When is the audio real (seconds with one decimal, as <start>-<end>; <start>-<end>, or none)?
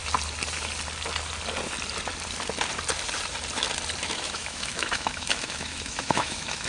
0.0-4.0